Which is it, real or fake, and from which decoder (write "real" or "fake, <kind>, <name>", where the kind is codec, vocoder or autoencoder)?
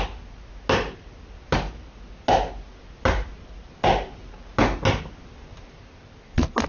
real